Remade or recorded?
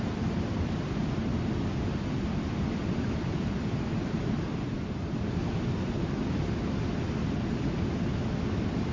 remade